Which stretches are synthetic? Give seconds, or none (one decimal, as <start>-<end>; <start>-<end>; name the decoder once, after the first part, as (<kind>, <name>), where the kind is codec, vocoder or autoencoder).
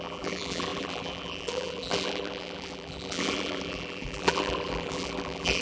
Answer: 0.0-5.6 (vocoder, BigVGAN v2)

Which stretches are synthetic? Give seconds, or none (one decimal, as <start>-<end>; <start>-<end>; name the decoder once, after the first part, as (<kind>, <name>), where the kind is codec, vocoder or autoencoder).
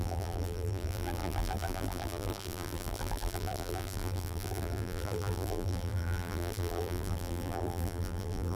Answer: 0.0-8.6 (vocoder, BigVGAN v2)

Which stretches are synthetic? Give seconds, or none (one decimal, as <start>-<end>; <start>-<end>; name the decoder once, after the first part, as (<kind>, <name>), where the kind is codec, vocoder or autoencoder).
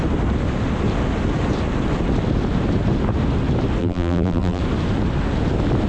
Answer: 3.8-4.6 (vocoder, BigVGAN v2)